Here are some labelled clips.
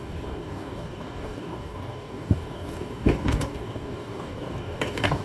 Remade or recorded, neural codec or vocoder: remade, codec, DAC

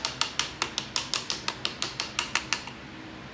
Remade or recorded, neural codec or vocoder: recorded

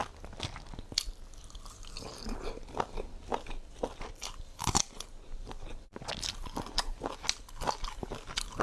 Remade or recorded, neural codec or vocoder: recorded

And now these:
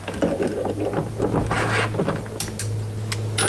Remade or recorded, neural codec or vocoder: recorded